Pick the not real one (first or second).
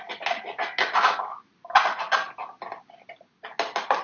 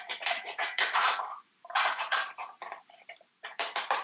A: second